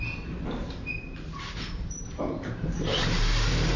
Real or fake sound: real